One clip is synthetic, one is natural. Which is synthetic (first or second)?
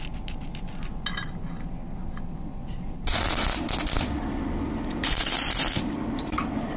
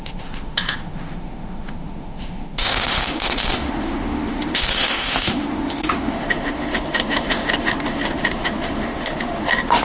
second